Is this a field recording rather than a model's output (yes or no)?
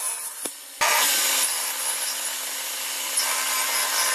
yes